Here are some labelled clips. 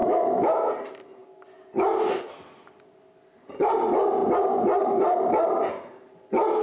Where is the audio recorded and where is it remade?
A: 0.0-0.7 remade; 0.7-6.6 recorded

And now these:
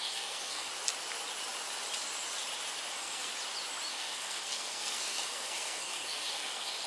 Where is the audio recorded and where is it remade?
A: 0.0-0.7 remade; 0.7-2.9 recorded; 2.9-3.3 remade; 3.3-3.9 recorded; 3.9-6.9 remade

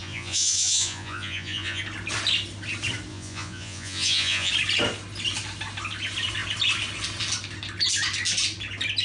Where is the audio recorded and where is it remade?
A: 0.0-1.8 remade; 1.8-3.1 recorded; 3.1-4.5 remade; 4.5-9.0 recorded

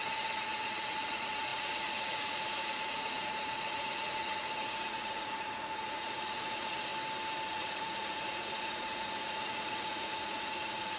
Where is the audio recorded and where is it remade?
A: 0.0-6.9 remade; 6.9-7.5 recorded; 7.5-11.0 remade

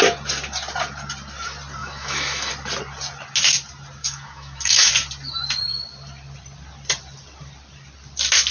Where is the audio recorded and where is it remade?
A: 0.0-1.8 recorded; 1.8-2.5 remade; 2.5-4.0 recorded; 4.0-4.9 remade; 4.9-8.5 recorded